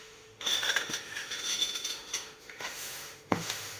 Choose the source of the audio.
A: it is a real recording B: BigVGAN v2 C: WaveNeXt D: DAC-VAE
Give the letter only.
D